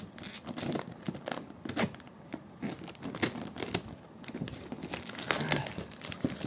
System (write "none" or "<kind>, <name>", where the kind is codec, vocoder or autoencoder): none